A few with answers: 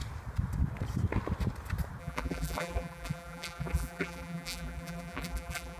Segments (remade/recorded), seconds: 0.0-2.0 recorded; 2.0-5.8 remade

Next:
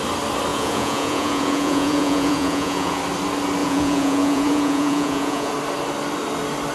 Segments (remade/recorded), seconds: 0.0-0.5 recorded; 0.5-3.0 remade; 3.0-3.6 recorded; 3.6-5.5 remade; 5.5-6.7 recorded

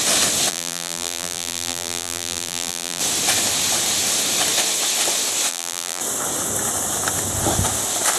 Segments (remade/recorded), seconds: 0.0-0.5 recorded; 0.5-3.0 remade; 3.0-5.5 recorded; 5.5-6.0 remade; 6.0-8.2 recorded

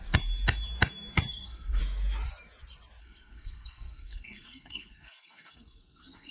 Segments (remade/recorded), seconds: 0.0-1.3 recorded; 1.3-1.8 remade; 1.8-3.0 recorded; 3.0-6.3 remade

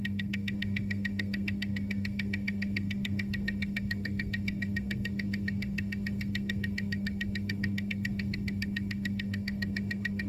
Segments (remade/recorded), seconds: 0.0-10.3 remade

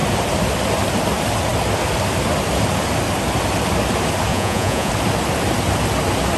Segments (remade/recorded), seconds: 0.0-4.3 recorded; 4.3-4.9 remade; 4.9-6.4 recorded